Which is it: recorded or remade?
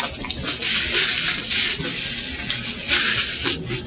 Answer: recorded